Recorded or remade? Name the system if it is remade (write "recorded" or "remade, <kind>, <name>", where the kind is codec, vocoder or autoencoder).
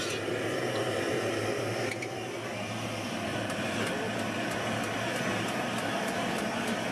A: recorded